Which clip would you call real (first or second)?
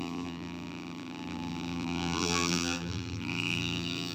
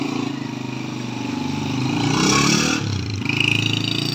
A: second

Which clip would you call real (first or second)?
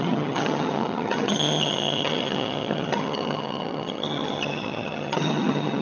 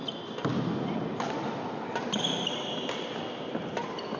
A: second